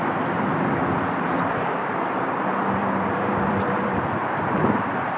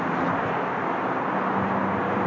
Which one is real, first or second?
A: second